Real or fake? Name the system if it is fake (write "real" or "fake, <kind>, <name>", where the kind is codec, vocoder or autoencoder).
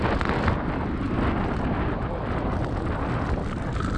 real